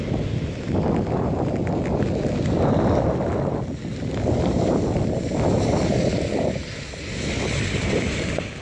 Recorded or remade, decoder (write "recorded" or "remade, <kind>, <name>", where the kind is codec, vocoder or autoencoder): recorded